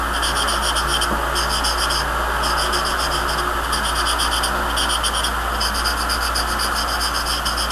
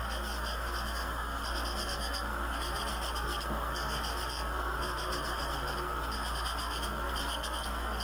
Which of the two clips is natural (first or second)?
first